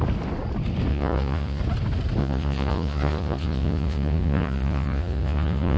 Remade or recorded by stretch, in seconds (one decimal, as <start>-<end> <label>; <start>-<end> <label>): 0.0-0.9 recorded; 0.9-1.6 remade; 1.6-2.2 recorded; 2.2-5.8 remade